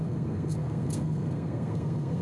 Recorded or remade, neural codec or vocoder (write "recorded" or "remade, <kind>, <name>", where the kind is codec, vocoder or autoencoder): remade, codec, SNAC